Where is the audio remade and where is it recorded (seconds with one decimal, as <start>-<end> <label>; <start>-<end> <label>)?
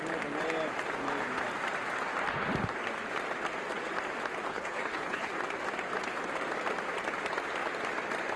0.0-4.5 recorded; 4.5-5.3 remade; 5.3-8.4 recorded